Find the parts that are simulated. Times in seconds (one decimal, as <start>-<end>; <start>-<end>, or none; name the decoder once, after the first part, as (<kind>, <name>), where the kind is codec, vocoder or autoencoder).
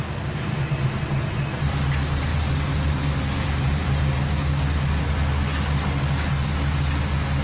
2.3-4.0 (vocoder, BigVGAN v2)